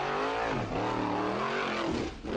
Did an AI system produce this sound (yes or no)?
no